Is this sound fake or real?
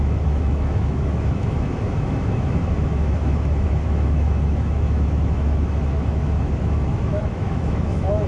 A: fake